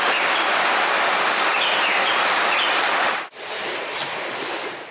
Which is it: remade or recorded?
recorded